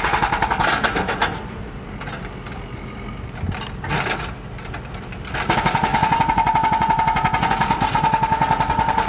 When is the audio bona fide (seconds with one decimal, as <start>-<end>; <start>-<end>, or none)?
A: 0.0-5.9; 7.5-9.1